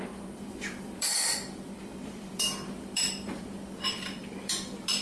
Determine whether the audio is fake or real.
fake